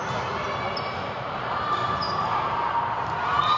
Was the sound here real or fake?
real